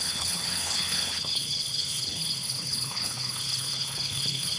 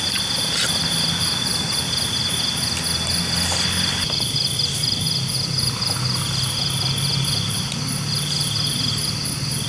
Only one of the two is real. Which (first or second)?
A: second